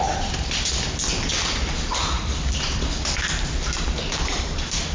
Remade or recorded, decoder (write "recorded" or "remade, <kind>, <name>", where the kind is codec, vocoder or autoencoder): remade, vocoder, BigVGAN v2